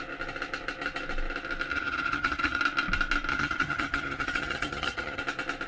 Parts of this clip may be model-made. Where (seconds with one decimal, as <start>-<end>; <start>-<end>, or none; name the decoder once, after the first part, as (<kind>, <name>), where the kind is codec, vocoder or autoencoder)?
1.7-2.6 (vocoder, HiFi-GAN); 3.3-5.2